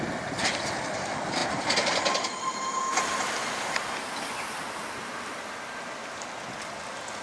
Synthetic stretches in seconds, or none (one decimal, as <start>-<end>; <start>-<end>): none

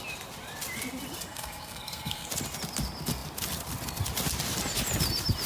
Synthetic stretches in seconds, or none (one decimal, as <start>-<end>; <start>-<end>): 1.3-2.3

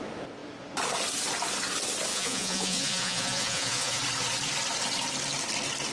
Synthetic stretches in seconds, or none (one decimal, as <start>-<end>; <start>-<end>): 2.1-4.0

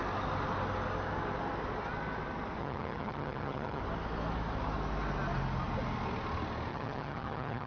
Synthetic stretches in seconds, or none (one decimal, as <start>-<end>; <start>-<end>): 2.6-3.8; 6.7-7.7

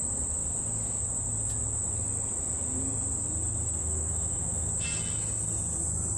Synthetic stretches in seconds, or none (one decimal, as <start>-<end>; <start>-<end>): 3.8-4.7

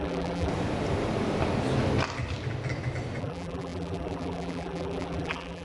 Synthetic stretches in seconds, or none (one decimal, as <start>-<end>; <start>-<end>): 0.0-0.5; 3.2-5.6

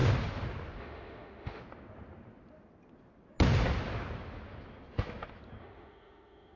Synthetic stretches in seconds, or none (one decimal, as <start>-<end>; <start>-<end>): 0.8-1.6; 5.6-6.6

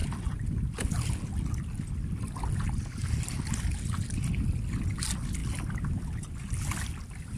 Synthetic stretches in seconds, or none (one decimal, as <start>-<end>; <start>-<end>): none